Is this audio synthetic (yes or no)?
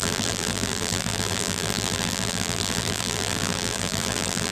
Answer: yes